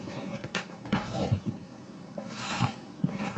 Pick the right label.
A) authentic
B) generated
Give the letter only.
B